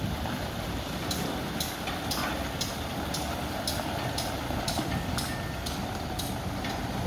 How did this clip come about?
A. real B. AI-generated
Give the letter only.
A